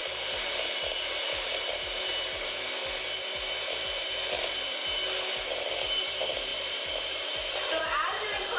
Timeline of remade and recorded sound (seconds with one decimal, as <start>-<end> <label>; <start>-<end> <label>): 0.0-2.8 remade; 2.8-4.3 recorded; 4.3-4.8 remade; 4.8-5.4 recorded; 5.4-8.6 remade